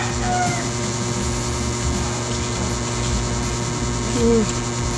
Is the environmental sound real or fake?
real